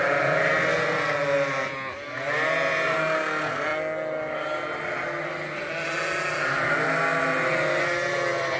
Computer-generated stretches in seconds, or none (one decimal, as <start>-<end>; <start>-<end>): none